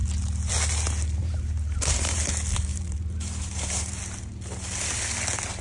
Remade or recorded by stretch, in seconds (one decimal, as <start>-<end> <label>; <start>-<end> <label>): 0.0-1.2 recorded; 1.2-2.2 remade; 2.2-2.7 recorded; 2.7-4.0 remade; 4.0-5.6 recorded